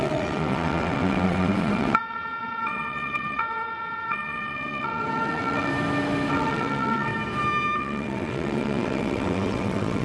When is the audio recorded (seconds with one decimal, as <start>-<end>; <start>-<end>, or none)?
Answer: 5.7-6.3; 7.1-7.8